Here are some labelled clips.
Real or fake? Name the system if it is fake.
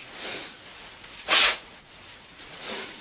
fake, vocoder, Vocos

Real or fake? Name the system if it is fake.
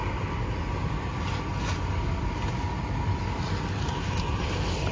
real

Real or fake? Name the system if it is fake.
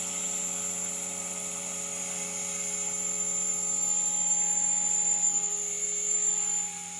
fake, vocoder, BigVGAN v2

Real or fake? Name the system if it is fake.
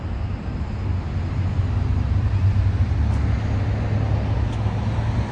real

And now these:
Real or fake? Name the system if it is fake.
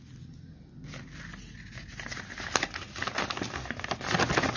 real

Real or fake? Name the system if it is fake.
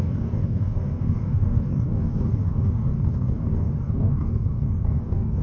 fake, codec, DAC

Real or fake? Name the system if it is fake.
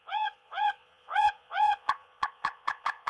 fake, vocoder, Vocos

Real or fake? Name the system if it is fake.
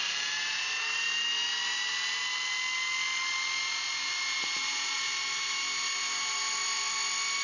real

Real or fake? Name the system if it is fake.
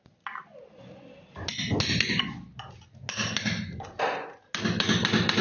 real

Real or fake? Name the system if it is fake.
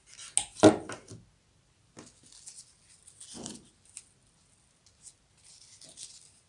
real